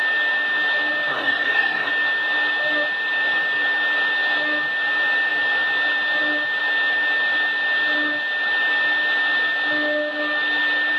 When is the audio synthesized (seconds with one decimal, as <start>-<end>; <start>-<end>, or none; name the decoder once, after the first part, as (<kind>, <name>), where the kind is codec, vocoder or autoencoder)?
1.1-1.9 (codec, SNAC)